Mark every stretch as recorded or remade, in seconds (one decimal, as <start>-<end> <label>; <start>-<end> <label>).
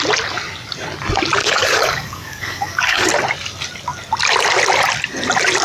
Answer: 0.0-1.4 recorded; 1.4-3.1 remade; 3.1-5.6 recorded